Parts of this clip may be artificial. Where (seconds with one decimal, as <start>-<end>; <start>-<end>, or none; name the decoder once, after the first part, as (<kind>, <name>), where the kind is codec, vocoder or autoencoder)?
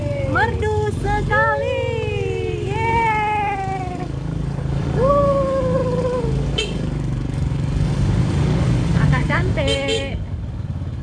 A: 0.0-1.6 (codec, DAC); 2.1-11.0